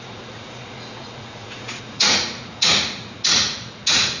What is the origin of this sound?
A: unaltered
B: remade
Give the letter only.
B